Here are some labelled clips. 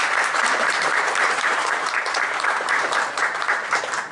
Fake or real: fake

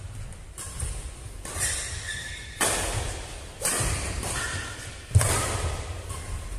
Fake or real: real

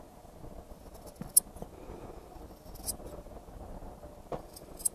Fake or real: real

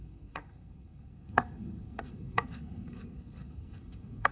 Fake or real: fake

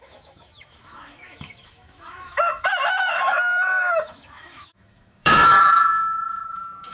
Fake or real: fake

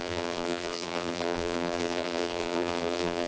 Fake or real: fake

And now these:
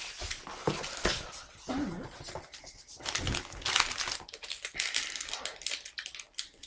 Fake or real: real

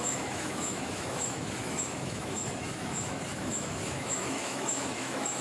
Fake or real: fake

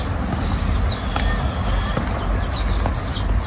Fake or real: real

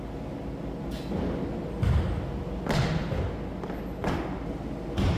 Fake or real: real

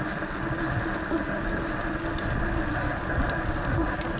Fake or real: real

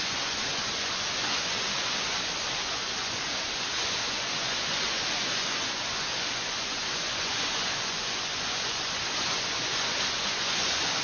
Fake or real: fake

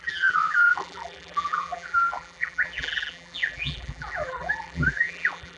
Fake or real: fake